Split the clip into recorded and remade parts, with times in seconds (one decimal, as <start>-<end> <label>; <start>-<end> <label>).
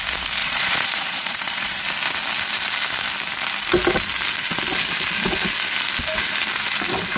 0.0-0.4 recorded; 0.4-1.8 remade; 1.8-7.2 recorded